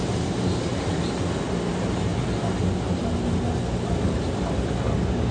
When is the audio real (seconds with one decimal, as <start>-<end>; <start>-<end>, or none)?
0.7-1.7; 2.1-5.3